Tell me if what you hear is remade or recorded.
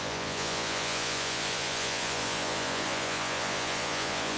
remade